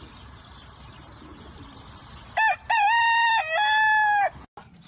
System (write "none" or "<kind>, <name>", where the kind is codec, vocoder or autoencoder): none